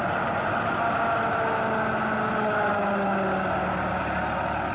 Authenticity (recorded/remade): recorded